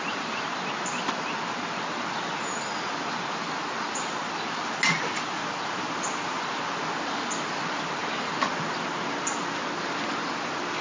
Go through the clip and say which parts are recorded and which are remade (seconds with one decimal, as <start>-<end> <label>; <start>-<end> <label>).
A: 0.0-10.8 recorded